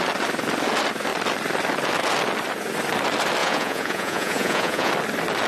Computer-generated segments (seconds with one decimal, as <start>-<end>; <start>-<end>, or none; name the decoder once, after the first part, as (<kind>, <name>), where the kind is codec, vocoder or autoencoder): 3.4-4.9 (vocoder, Vocos)